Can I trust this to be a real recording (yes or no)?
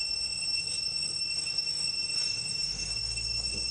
no